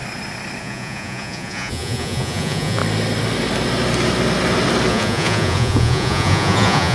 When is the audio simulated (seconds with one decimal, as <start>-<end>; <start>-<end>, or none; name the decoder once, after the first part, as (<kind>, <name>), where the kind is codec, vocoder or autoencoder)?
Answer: 0.6-2.8 (vocoder, Vocos); 4.9-6.9